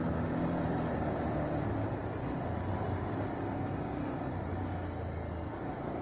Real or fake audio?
real